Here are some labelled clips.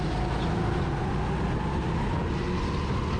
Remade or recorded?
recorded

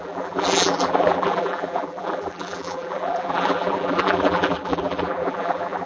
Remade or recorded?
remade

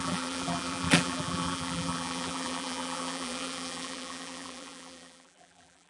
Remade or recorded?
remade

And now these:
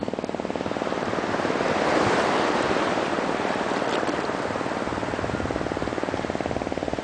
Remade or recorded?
recorded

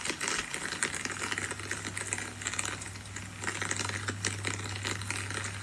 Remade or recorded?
recorded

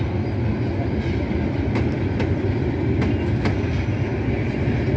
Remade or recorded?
recorded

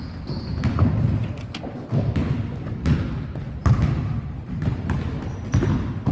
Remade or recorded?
recorded